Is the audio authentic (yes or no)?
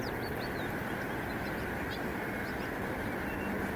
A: yes